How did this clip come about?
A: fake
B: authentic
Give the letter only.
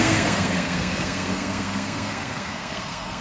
A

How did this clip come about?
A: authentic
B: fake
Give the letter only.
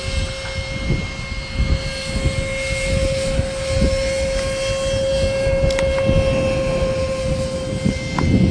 A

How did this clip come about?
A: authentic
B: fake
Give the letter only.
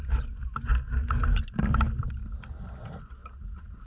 A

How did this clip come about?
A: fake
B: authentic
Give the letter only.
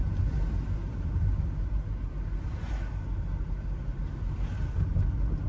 B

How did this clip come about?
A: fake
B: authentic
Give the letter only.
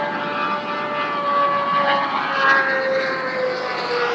B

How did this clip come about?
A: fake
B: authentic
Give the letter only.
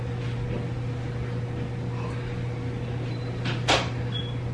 B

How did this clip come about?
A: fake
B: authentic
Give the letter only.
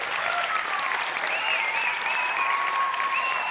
B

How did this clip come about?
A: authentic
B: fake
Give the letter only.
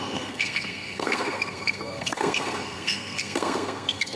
B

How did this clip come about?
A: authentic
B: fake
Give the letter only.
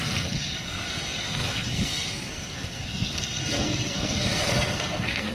B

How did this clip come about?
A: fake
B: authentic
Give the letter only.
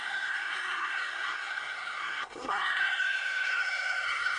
A